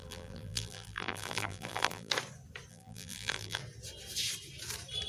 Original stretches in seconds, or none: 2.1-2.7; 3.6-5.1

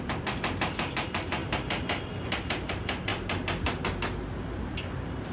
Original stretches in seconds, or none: 3.1-4.8

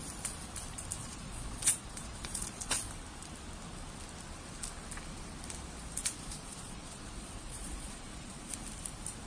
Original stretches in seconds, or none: 0.0-1.0; 2.9-6.0; 8.5-9.3